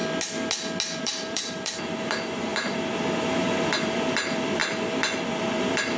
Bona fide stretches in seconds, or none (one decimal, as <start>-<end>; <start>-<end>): 0.0-1.0; 4.6-5.3